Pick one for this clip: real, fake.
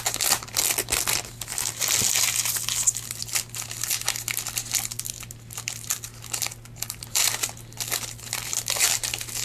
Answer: real